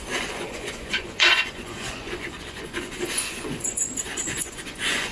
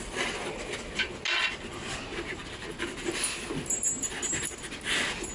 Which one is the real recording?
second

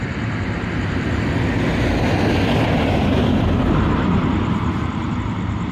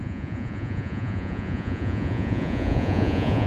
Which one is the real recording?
first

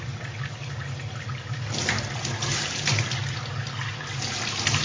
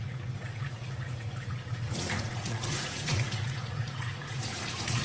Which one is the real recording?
first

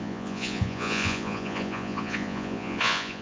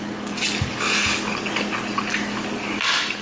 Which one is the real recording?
second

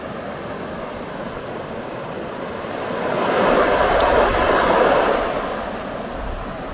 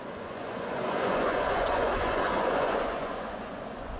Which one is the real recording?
first